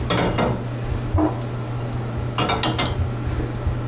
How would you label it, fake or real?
real